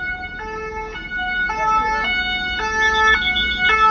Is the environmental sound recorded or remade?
recorded